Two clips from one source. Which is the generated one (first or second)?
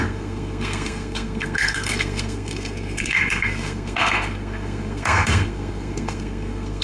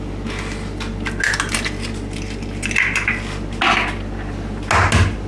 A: first